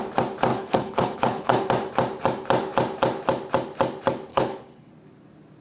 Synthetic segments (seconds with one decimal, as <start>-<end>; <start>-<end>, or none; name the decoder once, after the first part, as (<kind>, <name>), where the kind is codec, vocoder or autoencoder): 0.5-1.7 (codec, HILCodec); 4.3-4.9